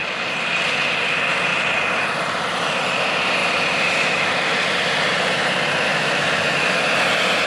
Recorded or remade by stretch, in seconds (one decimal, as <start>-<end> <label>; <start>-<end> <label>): 0.0-5.9 recorded; 5.9-6.8 remade; 6.8-7.5 recorded